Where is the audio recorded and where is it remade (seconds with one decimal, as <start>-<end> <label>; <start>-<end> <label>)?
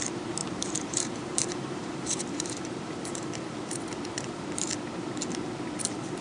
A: 0.0-0.4 recorded; 0.4-3.8 remade; 3.8-6.2 recorded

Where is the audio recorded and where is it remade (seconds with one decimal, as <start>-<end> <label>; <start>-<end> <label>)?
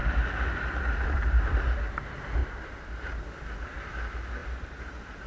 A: 0.0-2.4 recorded; 2.4-3.1 remade; 3.1-4.4 recorded; 4.4-5.3 remade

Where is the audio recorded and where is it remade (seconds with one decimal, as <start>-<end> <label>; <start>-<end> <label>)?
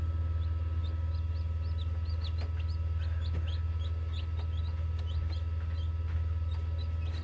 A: 0.0-7.2 recorded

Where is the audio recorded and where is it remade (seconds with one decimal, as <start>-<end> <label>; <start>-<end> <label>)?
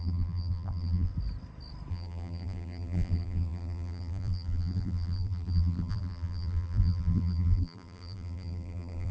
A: 0.0-1.1 remade; 1.1-1.9 recorded; 1.9-9.1 remade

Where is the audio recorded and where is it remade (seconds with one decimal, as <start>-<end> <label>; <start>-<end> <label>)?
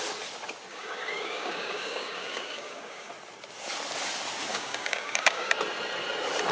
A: 0.0-0.7 recorded; 0.7-3.1 remade; 3.1-4.5 recorded; 4.5-5.5 remade; 5.5-6.5 recorded